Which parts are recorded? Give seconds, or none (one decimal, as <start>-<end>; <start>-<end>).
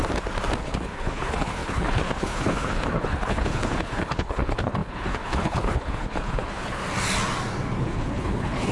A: 0.0-0.6; 6.8-7.8